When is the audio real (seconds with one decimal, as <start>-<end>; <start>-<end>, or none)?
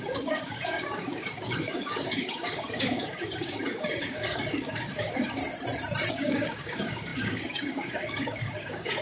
5.4-6.1